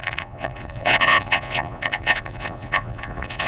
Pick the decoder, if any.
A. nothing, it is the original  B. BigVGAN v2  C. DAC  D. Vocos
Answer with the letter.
D